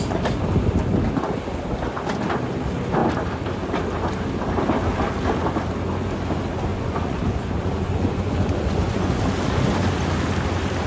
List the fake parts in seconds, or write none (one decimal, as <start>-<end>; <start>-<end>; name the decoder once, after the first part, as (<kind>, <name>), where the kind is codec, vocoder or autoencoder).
6.7-9.2 (vocoder, Vocos)